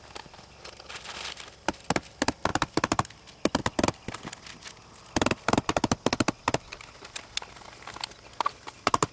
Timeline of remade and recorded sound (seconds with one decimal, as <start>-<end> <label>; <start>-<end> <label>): 0.0-9.1 recorded